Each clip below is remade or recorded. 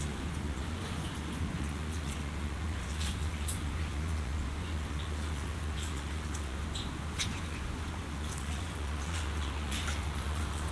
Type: remade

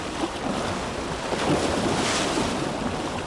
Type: recorded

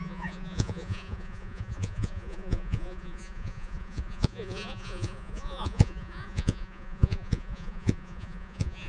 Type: remade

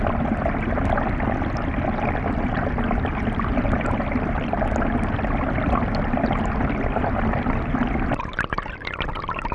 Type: recorded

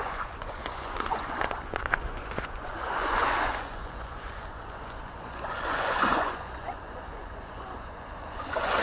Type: remade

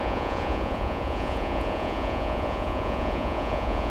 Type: remade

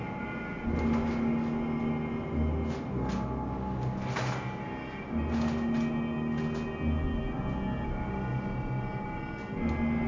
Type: recorded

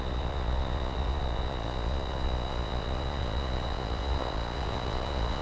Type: remade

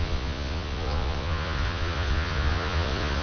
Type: remade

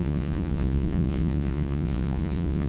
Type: remade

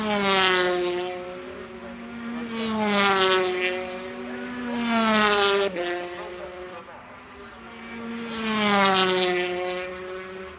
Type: recorded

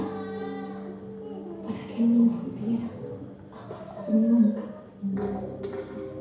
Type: recorded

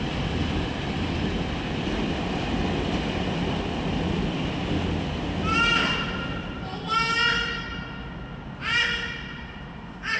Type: recorded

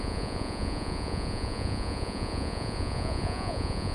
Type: remade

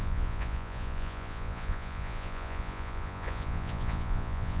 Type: remade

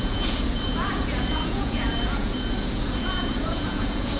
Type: remade